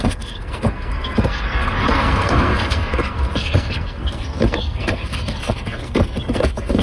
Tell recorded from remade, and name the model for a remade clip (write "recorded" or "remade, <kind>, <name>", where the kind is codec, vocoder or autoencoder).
remade, codec, SNAC